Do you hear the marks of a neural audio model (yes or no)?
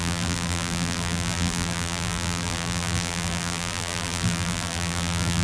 yes